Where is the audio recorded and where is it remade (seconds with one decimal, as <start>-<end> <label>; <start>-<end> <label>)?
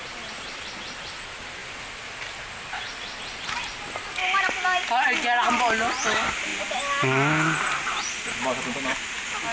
0.0-9.5 recorded